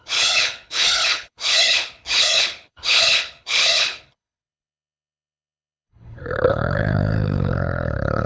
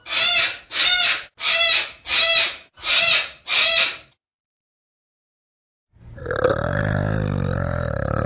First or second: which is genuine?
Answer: second